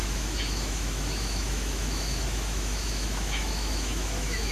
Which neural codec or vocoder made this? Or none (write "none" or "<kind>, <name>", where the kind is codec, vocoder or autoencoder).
autoencoder, DAC-VAE